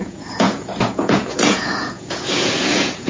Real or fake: fake